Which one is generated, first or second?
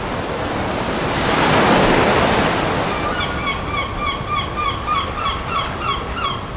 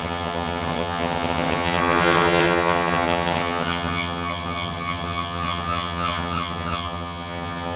second